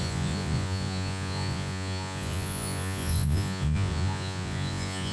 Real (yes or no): no